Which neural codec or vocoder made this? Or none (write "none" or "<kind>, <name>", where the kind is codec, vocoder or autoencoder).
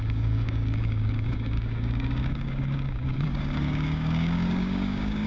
codec, DAC